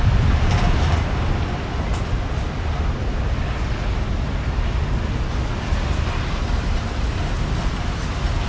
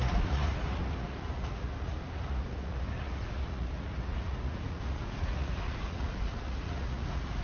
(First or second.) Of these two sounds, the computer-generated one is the second